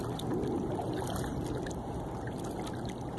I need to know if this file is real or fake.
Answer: real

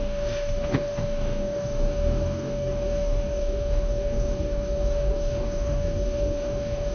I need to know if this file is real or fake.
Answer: fake